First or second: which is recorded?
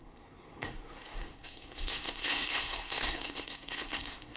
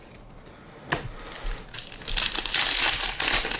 second